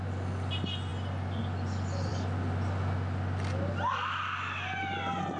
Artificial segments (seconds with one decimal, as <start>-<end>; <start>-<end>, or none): none